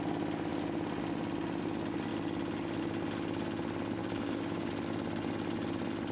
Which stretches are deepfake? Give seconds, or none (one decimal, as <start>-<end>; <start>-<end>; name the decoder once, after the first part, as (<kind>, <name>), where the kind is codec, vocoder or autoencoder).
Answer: 4.0-4.7 (codec, DAC)